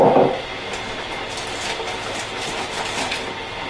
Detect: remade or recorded recorded